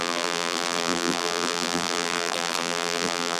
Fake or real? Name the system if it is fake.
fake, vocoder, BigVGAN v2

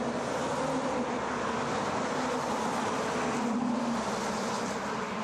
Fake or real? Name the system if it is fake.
real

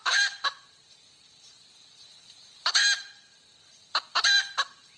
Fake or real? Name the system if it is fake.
fake, vocoder, BigVGAN v2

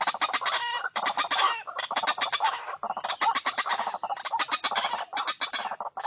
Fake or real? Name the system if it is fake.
real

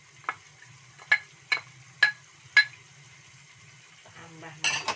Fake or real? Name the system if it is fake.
real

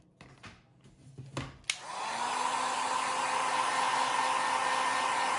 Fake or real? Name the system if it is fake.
real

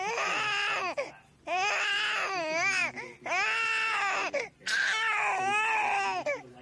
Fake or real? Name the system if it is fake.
real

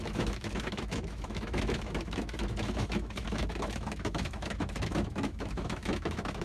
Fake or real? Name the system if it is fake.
fake, autoencoder, DAC-VAE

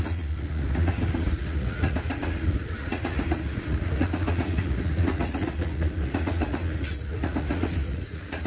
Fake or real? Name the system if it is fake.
fake, vocoder, Vocos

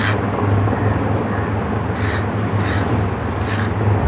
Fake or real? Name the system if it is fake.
real